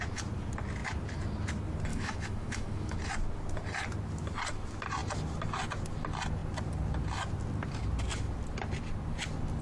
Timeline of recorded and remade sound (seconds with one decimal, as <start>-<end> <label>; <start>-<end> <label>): 0.0-1.9 recorded; 1.9-3.0 remade; 3.0-9.6 recorded